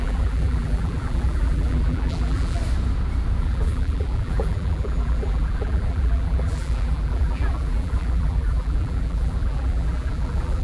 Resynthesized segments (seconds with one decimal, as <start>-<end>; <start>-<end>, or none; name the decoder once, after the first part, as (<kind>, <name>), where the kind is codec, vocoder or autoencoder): 0.0-2.6 (vocoder, BigVGAN v2); 3.4-10.6